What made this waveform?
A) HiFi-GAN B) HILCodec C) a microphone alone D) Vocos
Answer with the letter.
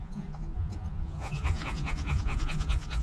D